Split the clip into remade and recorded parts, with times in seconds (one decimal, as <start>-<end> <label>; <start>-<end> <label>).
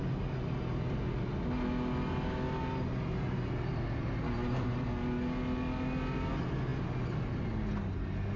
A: 0.0-8.4 recorded